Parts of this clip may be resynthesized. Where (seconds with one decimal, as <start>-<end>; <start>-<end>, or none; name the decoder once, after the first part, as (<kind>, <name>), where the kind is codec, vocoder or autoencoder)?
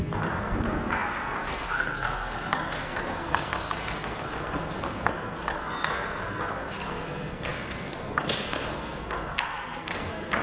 0.0-10.4 (codec, SNAC)